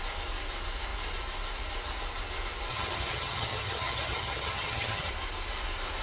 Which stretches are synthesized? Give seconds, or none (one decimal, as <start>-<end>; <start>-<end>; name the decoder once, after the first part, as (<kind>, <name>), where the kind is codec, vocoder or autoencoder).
2.7-5.1 (vocoder, HiFi-GAN)